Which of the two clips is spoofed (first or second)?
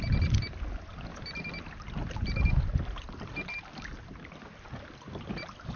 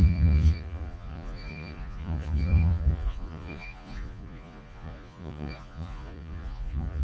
second